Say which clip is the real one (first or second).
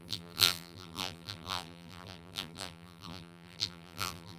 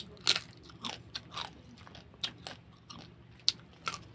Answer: second